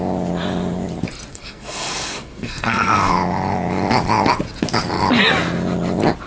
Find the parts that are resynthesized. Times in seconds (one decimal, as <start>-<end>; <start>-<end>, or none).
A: 1.3-3.1